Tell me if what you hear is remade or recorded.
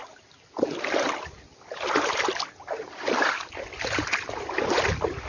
recorded